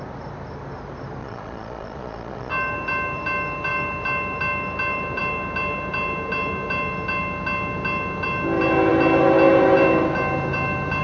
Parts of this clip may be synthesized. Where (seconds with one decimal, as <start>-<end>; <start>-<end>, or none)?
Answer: 1.2-2.5